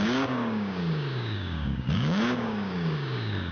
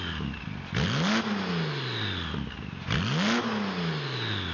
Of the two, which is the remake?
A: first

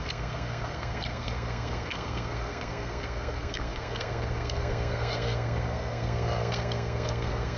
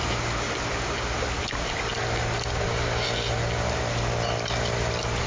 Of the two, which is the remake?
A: first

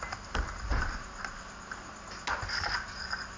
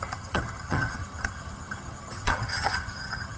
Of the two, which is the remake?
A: second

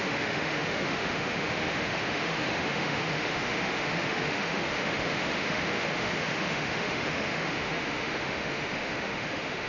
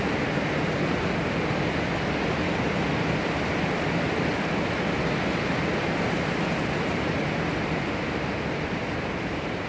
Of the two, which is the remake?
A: first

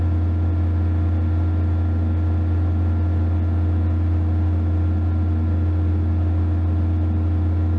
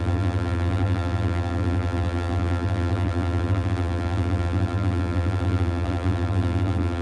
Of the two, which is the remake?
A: second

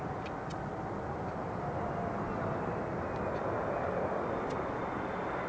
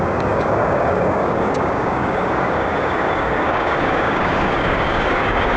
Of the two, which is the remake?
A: second